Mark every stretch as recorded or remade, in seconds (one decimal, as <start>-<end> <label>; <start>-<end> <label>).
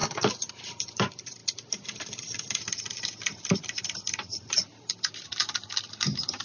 0.0-0.5 recorded; 0.5-6.4 remade